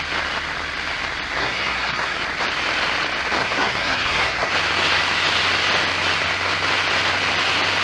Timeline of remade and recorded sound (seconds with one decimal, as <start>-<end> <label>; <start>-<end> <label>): 0.0-1.4 recorded; 1.4-2.2 remade; 2.2-3.4 recorded; 3.4-4.5 remade; 4.5-7.8 recorded